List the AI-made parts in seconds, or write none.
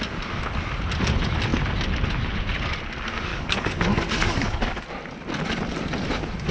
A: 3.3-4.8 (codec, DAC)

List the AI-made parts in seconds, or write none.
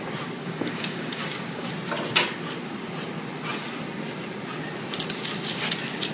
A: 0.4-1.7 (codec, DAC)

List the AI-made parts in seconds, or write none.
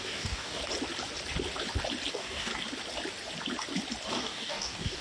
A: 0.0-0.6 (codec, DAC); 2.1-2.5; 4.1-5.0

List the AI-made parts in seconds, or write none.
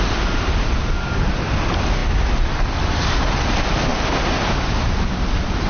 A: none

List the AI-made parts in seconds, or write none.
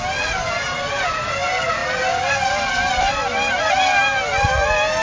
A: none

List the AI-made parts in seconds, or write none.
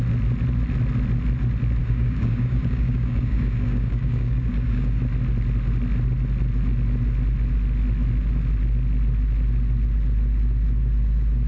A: 1.8-5.0 (codec, DAC)